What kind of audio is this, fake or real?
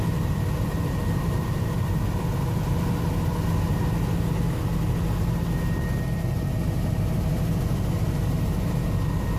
real